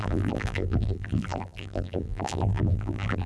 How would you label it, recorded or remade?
remade